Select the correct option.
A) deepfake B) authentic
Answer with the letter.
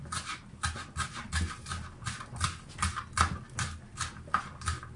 B